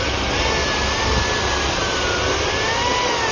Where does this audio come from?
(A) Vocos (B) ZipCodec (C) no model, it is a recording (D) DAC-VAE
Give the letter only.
C